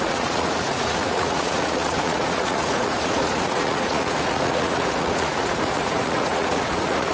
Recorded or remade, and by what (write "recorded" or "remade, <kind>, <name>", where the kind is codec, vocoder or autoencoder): remade, vocoder, Vocos